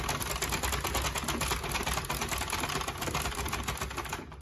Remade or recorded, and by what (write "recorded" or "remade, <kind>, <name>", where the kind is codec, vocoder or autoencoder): recorded